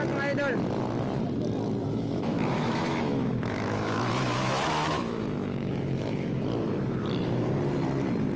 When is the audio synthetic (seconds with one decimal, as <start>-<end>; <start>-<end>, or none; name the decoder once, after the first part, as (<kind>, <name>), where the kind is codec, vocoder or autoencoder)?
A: 1.8-6.4 (autoencoder, DAC-VAE)